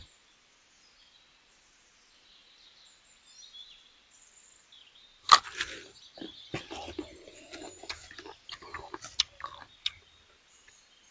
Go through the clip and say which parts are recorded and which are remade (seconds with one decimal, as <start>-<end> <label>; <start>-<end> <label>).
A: 0.0-11.1 recorded